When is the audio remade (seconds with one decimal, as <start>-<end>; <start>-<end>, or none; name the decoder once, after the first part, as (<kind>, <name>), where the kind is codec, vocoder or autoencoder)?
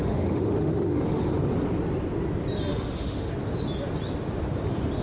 0.0-1.4 (autoencoder, DAC-VAE); 2.7-3.3